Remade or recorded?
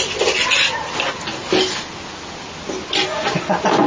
recorded